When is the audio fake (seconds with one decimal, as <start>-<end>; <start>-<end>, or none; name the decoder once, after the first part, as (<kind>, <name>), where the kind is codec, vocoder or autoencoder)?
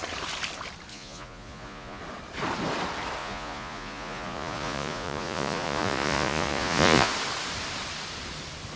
0.9-2.0 (vocoder, Vocos); 3.2-7.1